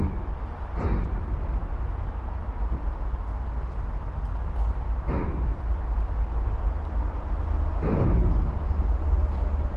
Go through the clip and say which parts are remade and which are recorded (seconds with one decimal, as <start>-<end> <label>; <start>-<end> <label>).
0.0-1.6 recorded; 1.6-2.4 remade; 2.4-9.8 recorded